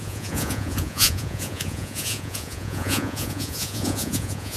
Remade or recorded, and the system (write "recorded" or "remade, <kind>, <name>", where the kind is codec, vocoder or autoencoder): remade, vocoder, Vocos